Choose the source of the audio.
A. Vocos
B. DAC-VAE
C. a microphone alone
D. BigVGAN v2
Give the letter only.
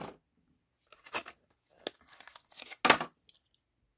C